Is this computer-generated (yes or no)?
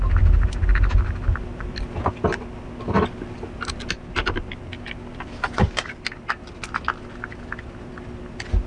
no